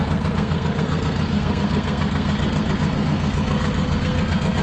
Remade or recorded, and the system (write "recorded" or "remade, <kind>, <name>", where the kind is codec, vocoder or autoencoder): remade, codec, SNAC